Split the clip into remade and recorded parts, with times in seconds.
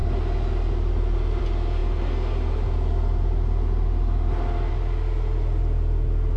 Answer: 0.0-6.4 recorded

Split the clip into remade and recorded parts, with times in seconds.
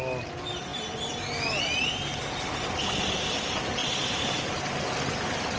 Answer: 0.0-5.6 recorded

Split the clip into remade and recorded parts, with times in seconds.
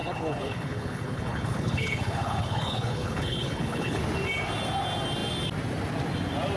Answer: 0.0-4.0 remade; 4.0-6.6 recorded